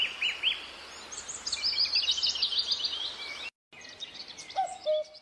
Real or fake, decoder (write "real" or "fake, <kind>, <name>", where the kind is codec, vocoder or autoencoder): real